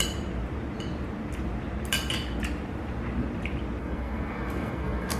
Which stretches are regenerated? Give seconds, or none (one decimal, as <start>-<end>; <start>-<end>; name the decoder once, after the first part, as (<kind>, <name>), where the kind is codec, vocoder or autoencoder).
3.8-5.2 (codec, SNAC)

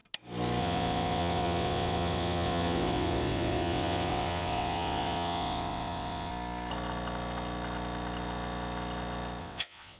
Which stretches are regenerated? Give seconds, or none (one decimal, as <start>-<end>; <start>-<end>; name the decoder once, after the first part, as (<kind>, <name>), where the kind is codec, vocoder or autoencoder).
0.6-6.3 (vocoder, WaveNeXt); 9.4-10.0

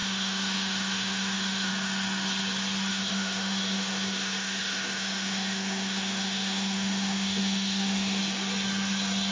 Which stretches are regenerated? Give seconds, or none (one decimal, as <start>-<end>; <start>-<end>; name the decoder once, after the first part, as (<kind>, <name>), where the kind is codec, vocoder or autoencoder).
0.0-1.7 (autoencoder, DAC-VAE); 2.9-8.2